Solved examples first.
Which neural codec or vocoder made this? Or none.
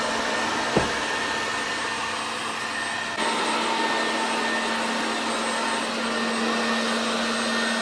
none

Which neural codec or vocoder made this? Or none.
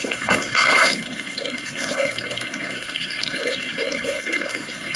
codec, SNAC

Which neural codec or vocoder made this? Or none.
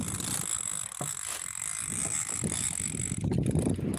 none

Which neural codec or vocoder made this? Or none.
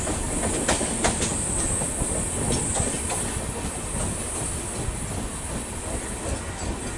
none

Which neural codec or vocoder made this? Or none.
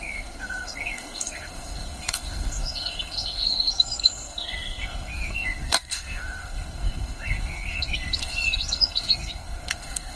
codec, SNAC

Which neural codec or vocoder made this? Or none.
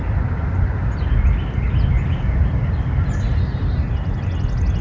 none